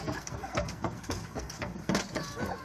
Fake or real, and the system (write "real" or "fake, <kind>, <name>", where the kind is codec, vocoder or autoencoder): fake, codec, SNAC